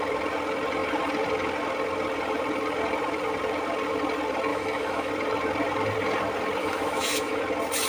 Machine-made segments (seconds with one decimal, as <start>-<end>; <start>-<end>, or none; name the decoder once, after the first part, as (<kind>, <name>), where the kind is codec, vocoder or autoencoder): 4.5-5.1 (autoencoder, DAC-VAE); 6.6-7.4